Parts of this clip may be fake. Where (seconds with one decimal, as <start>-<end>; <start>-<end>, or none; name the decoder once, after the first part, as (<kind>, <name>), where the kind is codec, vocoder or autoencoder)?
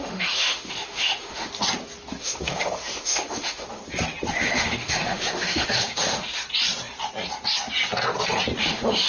0.0-1.5 (autoencoder, DAC-VAE); 2.2-3.8; 4.3-6.4; 8.6-9.1